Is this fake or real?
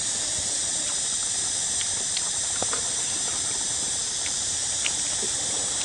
fake